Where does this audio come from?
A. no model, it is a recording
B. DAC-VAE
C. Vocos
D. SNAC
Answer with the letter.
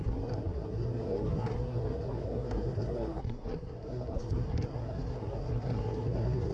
D